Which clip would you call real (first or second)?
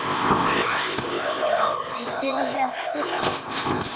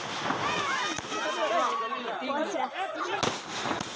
second